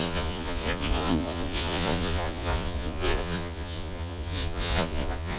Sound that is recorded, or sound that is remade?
remade